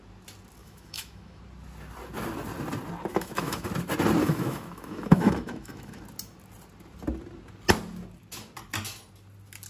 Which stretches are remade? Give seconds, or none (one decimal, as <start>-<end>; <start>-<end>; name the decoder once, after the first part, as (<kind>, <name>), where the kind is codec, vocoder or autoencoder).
0.6-1.4 (autoencoder, DAC-VAE); 3.1-3.7; 4.2-6.0